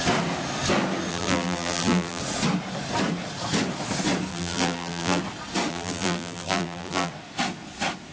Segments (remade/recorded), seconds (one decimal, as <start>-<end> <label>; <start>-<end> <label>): 0.0-1.1 recorded; 1.1-2.2 remade; 2.2-4.3 recorded; 4.3-5.2 remade; 5.2-5.7 recorded; 5.7-7.1 remade; 7.1-8.1 recorded